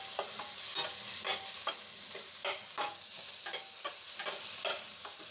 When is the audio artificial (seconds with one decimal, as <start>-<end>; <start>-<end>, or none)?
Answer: none